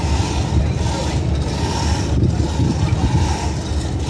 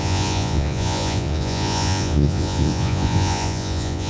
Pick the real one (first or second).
first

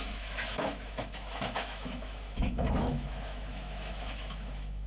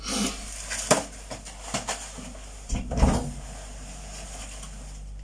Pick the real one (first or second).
second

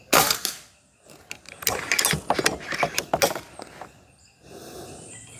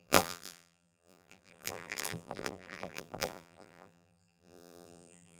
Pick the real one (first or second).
first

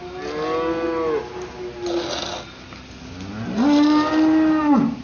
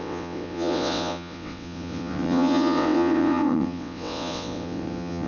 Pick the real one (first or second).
first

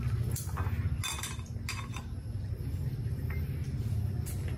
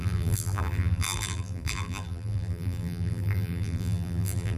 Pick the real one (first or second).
first